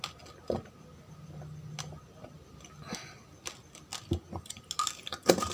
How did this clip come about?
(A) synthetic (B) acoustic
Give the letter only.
B